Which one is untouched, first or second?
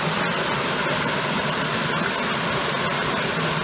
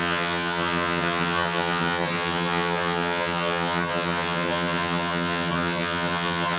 first